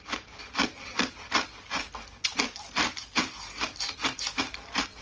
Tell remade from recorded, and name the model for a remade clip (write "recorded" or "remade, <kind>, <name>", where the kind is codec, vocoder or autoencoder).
recorded